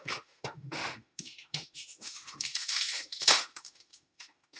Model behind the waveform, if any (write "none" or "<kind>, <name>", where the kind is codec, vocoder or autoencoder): autoencoder, DAC-VAE